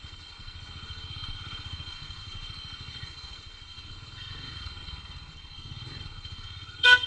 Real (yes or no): no